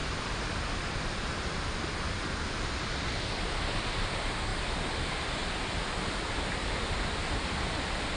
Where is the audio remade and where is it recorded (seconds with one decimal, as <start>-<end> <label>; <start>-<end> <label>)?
0.0-8.2 remade

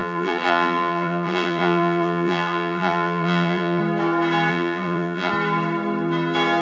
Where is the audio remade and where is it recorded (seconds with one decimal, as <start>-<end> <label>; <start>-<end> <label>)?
0.0-3.8 remade; 3.8-4.5 recorded; 4.5-5.3 remade; 5.3-6.6 recorded

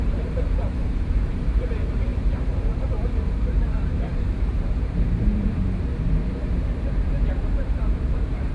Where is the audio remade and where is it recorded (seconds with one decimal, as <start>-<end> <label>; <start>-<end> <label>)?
0.0-8.5 remade

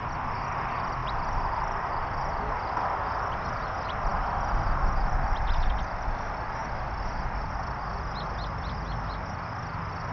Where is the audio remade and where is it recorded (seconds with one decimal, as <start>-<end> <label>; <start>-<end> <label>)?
0.0-1.0 recorded; 1.0-3.6 remade; 3.6-6.6 recorded; 6.6-7.8 remade; 7.8-10.1 recorded

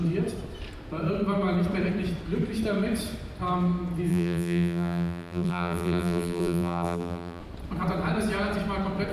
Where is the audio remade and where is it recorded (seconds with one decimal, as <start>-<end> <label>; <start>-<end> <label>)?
0.0-4.1 recorded; 4.1-7.4 remade; 7.4-9.1 recorded

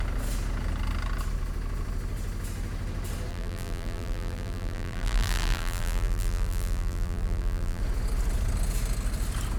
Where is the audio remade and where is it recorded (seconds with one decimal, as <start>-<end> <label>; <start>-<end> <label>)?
0.0-3.3 recorded; 3.3-7.8 remade; 7.8-9.6 recorded

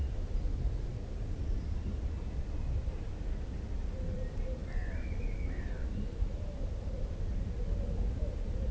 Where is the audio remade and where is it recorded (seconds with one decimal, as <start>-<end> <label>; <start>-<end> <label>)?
0.0-0.9 recorded; 0.9-2.2 remade; 2.2-4.6 recorded; 4.6-8.7 remade